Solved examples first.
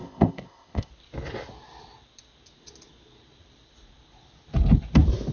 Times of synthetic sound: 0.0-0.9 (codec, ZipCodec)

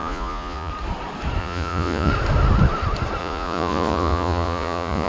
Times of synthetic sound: 0.0-0.7 (vocoder, Vocos); 1.4-2.1; 3.2-5.1

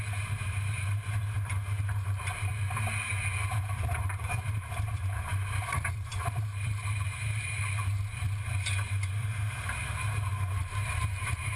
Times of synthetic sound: 0.0-2.5 (vocoder, BigVGAN v2); 3.5-11.6

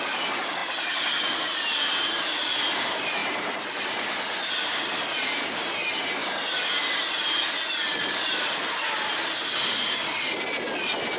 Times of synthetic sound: none

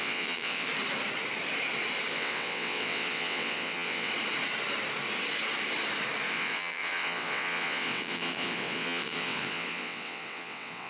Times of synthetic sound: 0.0-0.7 (vocoder, WaveNeXt); 2.1-4.1; 6.3-10.9